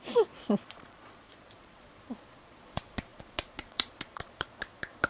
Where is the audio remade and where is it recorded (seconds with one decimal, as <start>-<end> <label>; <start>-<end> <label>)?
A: 0.0-5.1 remade